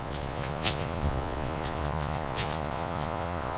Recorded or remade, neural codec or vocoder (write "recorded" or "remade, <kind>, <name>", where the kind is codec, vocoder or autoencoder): remade, vocoder, Vocos